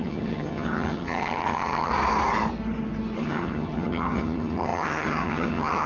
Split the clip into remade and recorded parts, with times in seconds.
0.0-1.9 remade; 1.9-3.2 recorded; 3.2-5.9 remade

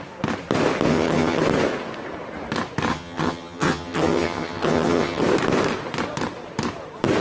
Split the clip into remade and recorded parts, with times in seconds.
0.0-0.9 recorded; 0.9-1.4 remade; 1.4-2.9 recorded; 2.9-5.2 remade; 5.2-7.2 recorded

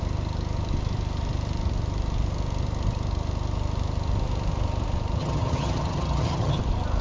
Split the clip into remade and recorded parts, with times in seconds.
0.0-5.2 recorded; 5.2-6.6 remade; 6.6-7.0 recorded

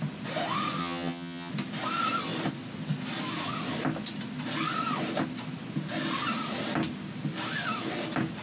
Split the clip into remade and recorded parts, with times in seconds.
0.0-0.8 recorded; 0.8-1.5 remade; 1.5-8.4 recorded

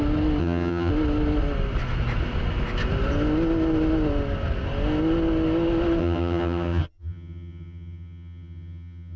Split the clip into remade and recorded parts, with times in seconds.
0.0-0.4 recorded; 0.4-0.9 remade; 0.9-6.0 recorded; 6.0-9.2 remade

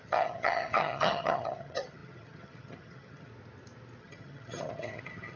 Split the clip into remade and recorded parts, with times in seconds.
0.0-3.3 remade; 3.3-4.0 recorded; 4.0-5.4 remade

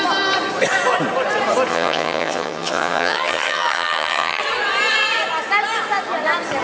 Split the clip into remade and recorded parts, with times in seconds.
0.0-1.7 recorded; 1.7-4.4 remade; 4.4-6.6 recorded